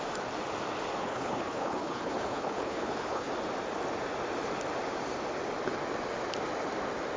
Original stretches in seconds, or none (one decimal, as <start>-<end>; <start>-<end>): 0.0-1.0; 3.3-7.2